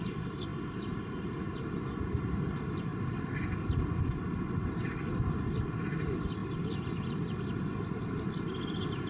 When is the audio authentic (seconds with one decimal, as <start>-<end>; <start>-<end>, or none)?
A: 0.0-9.1